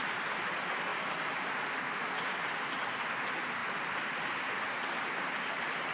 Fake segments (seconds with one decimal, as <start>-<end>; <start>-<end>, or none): none